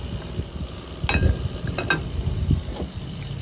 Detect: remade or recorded recorded